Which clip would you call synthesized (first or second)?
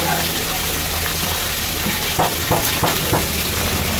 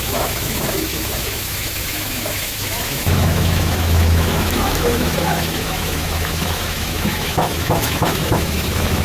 second